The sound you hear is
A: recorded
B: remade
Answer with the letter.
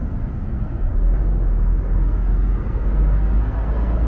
B